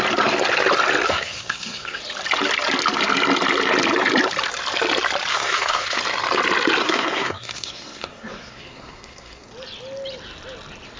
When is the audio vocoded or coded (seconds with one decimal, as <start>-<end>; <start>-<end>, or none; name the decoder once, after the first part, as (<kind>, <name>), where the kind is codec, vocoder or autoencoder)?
1.1-2.0 (codec, SNAC); 5.3-6.0; 6.8-9.5